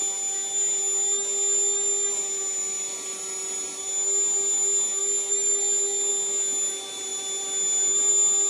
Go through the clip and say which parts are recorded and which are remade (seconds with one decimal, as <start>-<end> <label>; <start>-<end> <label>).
0.0-8.5 recorded